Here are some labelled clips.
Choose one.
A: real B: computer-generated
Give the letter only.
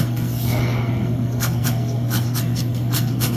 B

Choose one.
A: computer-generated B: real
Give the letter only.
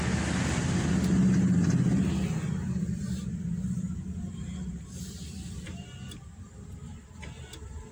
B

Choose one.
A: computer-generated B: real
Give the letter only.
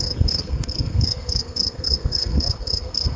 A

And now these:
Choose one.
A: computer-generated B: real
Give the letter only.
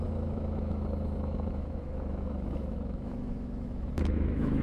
A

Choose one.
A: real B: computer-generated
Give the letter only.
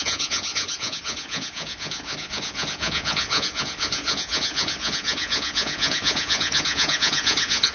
B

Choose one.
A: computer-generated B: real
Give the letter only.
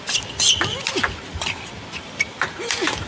B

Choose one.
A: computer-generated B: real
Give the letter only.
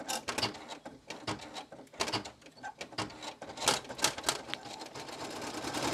B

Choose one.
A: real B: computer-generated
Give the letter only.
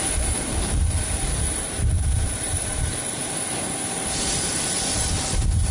B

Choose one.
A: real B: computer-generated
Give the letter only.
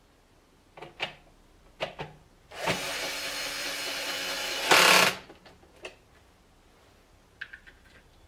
A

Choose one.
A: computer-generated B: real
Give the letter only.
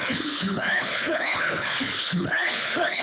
A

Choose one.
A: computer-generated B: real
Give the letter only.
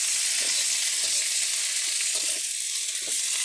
B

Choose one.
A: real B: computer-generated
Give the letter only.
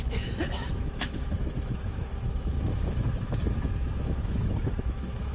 B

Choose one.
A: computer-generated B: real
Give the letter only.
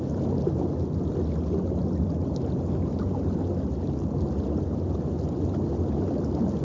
B